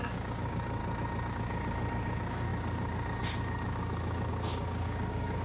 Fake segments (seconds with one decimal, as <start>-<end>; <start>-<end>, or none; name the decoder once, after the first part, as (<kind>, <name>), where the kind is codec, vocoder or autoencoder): 0.0-0.8 (codec, DAC); 1.3-5.4

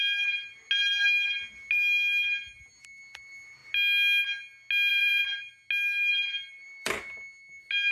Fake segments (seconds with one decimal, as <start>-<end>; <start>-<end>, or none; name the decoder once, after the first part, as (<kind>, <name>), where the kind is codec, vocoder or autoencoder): 4.9-5.5 (vocoder, BigVGAN v2); 6.1-7.0